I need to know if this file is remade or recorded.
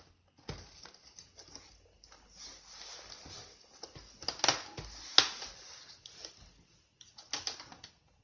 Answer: recorded